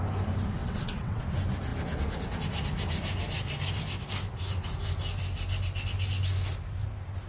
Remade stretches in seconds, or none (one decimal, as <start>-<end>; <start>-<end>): 0.6-1.2